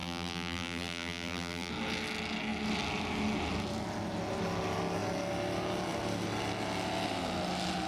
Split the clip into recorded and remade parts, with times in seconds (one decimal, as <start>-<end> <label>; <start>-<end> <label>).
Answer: 0.0-1.7 remade; 1.7-7.9 recorded

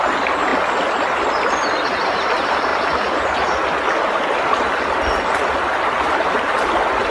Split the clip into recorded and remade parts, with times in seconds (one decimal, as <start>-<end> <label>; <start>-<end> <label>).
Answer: 0.0-0.5 remade; 0.5-2.0 recorded; 2.0-2.7 remade; 2.7-7.1 recorded

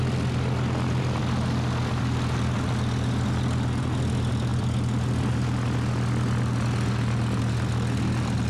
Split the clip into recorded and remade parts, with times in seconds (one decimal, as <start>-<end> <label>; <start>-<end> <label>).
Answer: 0.0-8.5 recorded

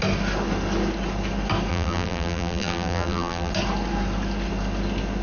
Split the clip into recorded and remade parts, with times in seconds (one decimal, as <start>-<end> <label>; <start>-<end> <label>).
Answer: 0.0-1.7 recorded; 1.7-3.5 remade; 3.5-5.2 recorded